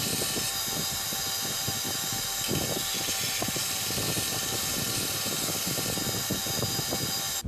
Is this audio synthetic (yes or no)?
no